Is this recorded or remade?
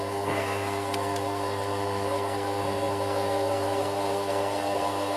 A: remade